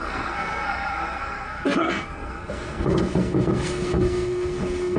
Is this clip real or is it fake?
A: fake